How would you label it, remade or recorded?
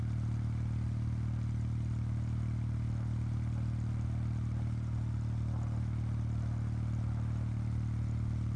recorded